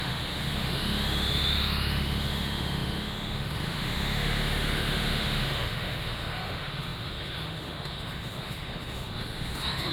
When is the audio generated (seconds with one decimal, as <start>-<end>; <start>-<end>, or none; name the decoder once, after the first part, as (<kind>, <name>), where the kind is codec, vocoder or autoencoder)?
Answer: 0.0-9.9 (autoencoder, DAC-VAE)